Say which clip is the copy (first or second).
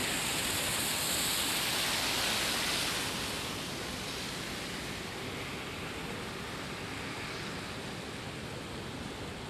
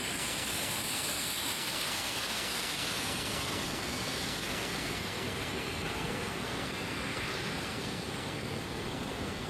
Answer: second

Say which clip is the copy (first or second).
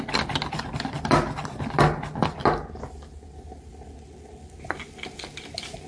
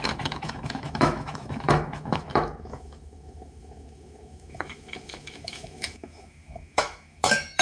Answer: second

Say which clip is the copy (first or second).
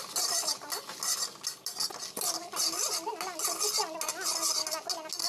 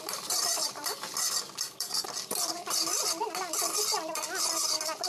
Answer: second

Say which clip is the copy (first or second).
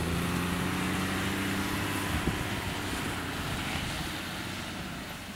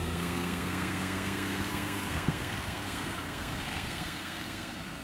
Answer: second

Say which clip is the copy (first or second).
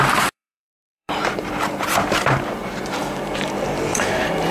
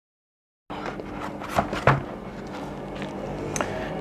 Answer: first